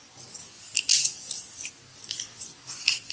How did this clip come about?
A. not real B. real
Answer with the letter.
B